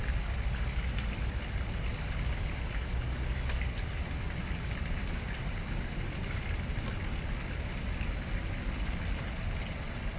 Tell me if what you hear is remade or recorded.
recorded